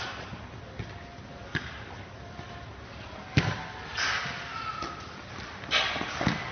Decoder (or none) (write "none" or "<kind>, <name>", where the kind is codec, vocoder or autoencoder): none